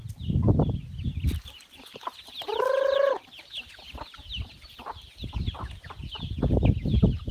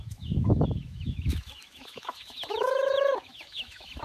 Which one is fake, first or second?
second